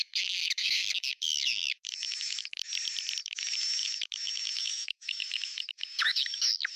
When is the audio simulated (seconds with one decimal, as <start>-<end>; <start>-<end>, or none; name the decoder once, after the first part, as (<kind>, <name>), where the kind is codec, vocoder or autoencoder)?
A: 0.0-2.6 (autoencoder, DAC-VAE); 3.2-6.8